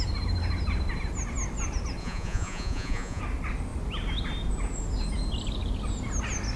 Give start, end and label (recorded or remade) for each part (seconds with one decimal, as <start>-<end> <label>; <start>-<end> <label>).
0.0-2.0 recorded; 2.0-3.2 remade; 3.2-6.6 recorded